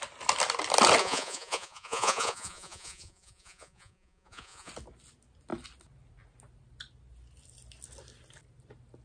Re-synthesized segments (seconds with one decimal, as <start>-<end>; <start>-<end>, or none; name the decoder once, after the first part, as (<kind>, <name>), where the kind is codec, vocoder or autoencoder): 1.0-4.7 (vocoder, Vocos)